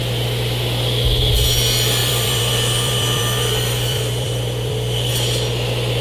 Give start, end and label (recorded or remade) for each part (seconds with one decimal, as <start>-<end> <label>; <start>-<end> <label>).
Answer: 0.0-2.0 recorded; 2.0-5.1 remade; 5.1-6.0 recorded